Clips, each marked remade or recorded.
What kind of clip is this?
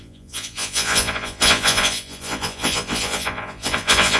remade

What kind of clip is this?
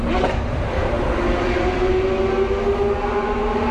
recorded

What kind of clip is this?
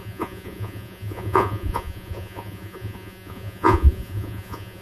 remade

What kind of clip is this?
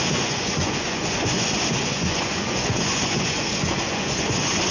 remade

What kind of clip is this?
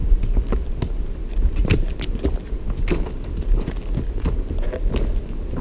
recorded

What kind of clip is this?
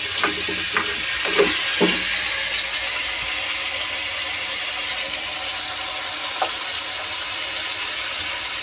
recorded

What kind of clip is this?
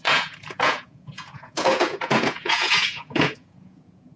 remade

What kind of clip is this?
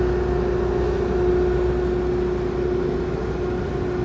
recorded